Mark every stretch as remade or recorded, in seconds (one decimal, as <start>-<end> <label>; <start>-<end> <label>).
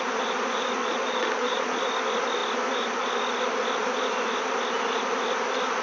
0.0-0.8 recorded; 0.8-1.7 remade; 1.7-5.8 recorded